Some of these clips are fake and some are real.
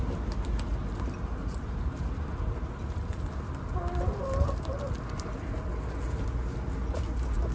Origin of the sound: real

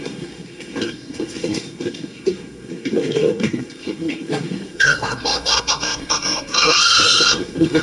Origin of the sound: fake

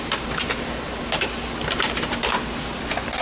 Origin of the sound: real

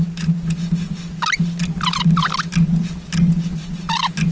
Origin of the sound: real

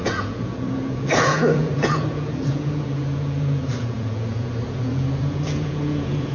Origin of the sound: fake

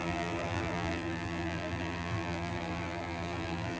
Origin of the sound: fake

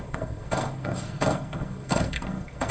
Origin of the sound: fake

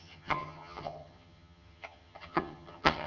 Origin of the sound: fake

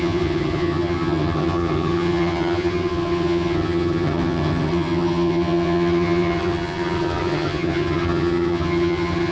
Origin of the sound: fake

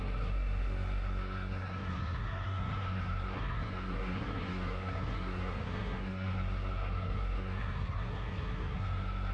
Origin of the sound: fake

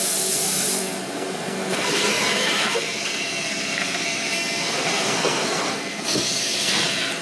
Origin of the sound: fake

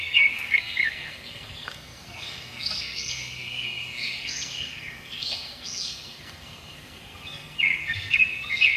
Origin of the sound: fake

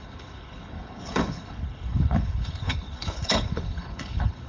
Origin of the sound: fake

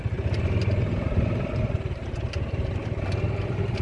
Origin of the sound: real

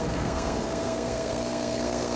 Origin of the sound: fake